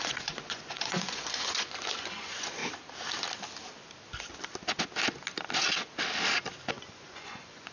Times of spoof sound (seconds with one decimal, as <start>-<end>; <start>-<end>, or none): 0.0-2.6; 6.7-7.7